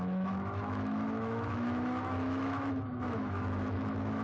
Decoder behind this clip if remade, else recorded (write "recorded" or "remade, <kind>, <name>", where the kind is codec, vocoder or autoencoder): remade, autoencoder, DAC-VAE